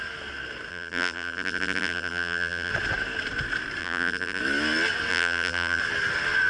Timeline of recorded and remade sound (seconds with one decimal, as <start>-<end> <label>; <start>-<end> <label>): 0.0-0.7 recorded; 0.7-2.7 remade; 2.7-3.8 recorded; 3.8-4.4 remade; 4.4-5.1 recorded; 5.1-5.8 remade; 5.8-6.5 recorded